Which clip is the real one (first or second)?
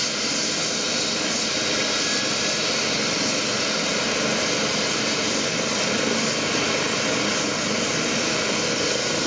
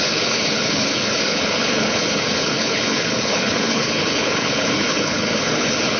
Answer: first